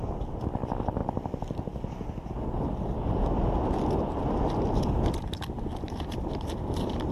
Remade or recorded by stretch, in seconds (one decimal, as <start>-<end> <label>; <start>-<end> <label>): 0.0-7.1 recorded

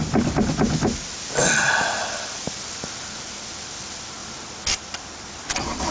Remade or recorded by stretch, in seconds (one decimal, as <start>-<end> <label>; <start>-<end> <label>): 0.0-5.9 recorded

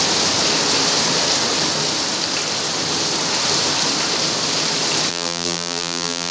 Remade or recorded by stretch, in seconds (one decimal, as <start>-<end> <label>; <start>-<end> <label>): 0.0-5.1 recorded; 5.1-6.3 remade